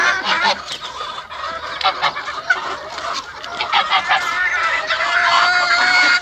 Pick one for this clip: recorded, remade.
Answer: remade